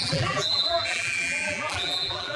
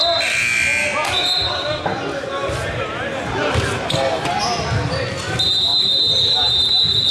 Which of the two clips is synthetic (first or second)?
first